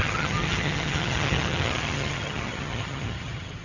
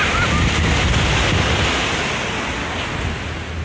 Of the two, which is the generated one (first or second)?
first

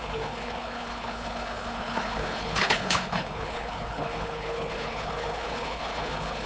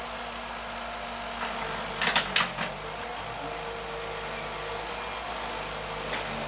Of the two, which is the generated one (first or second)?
first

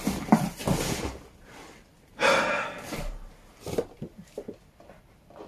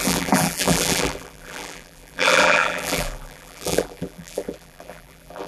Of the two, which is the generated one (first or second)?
second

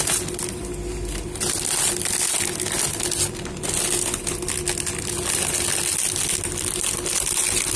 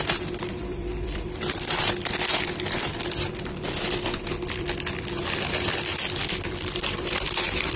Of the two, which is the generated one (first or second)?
second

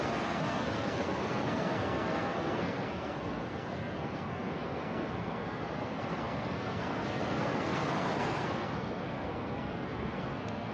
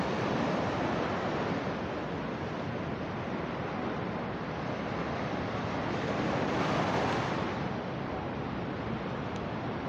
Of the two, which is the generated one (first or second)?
first